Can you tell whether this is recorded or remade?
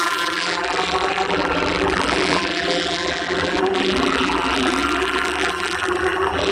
remade